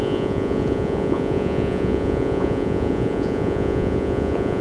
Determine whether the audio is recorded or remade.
remade